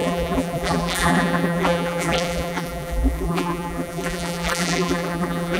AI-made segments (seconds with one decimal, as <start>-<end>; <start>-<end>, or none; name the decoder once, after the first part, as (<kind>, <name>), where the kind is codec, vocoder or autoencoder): 0.0-5.6 (vocoder, BigVGAN v2)